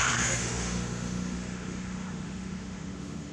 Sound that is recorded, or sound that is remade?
remade